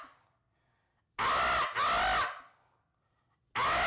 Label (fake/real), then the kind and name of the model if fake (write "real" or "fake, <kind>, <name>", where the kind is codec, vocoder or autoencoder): real